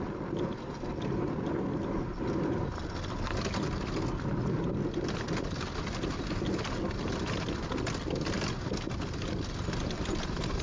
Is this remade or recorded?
recorded